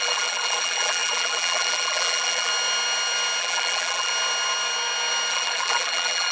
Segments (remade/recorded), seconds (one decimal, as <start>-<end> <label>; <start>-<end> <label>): 0.0-2.5 remade; 2.5-3.4 recorded; 3.4-4.1 remade; 4.1-5.3 recorded; 5.3-6.3 remade

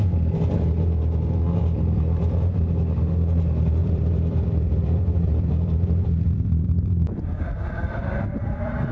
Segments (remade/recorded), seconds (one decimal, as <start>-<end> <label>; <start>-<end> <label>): 0.0-3.8 recorded; 3.8-8.9 remade

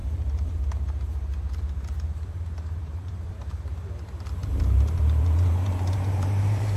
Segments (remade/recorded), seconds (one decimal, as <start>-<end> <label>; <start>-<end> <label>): 0.0-3.3 remade; 3.3-4.4 recorded; 4.4-6.8 remade

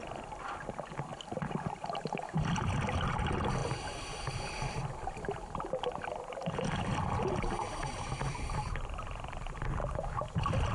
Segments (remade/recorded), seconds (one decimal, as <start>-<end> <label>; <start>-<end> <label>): 0.0-3.6 recorded; 3.6-7.2 remade; 7.2-9.8 recorded; 9.8-10.7 remade

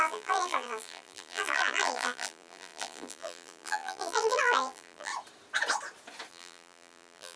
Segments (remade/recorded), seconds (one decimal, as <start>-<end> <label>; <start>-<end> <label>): 0.0-5.1 remade; 5.1-6.3 recorded; 6.3-7.4 remade

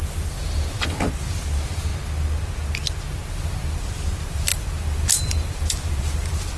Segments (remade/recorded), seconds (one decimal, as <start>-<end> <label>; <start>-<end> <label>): 0.0-1.9 remade; 1.9-3.3 recorded; 3.3-6.6 remade

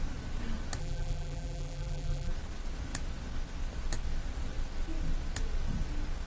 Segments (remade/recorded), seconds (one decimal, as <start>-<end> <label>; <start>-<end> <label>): 0.0-0.8 recorded; 0.8-2.3 remade; 2.3-6.3 recorded